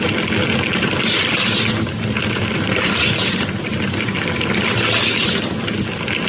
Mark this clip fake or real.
real